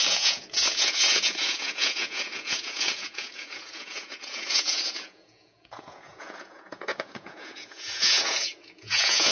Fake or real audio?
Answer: fake